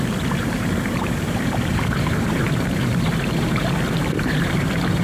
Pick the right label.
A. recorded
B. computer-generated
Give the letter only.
B